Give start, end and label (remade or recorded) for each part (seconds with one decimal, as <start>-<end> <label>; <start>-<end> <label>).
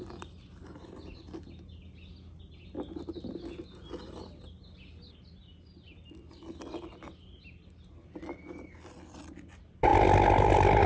0.0-10.9 recorded